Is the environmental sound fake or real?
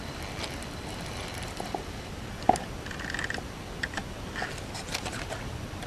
real